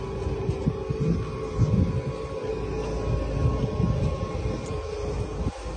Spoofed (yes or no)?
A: no